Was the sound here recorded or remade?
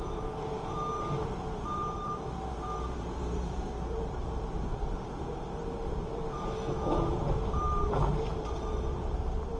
remade